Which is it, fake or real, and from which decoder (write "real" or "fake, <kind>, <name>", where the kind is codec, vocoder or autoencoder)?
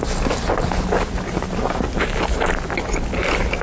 real